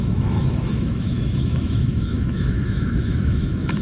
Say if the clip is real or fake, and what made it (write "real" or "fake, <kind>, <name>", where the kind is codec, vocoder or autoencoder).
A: fake, autoencoder, DAC-VAE